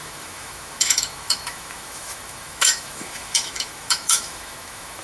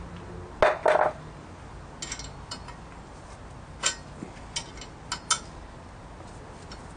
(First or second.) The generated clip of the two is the first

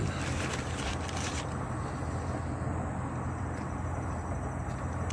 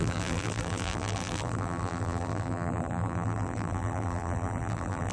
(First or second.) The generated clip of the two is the second